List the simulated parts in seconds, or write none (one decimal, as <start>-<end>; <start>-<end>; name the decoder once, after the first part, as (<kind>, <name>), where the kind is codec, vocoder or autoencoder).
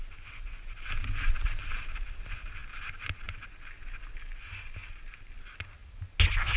none